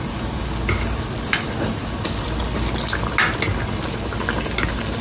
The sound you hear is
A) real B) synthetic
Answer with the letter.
A